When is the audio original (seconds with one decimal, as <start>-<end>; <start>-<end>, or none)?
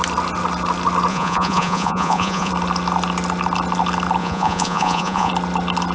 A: 0.0-1.1; 2.5-4.2; 5.3-5.9